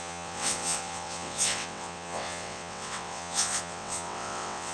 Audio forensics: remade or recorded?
remade